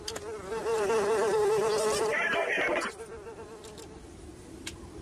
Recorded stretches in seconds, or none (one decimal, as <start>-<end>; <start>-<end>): 0.0-0.6; 3.5-5.0